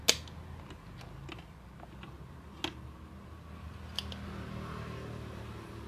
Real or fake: real